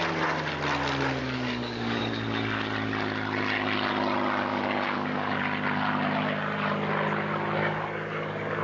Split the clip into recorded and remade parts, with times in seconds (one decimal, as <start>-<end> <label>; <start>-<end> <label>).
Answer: 0.0-1.2 recorded; 1.2-2.0 remade; 2.0-4.5 recorded; 4.5-5.4 remade; 5.4-7.6 recorded; 7.6-8.6 remade